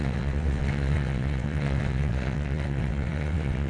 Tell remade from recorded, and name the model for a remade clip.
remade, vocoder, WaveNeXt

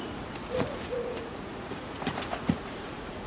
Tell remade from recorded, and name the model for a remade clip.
remade, vocoder, Vocos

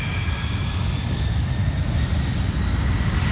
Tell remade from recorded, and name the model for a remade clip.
recorded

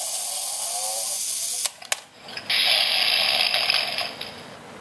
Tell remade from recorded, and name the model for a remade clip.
recorded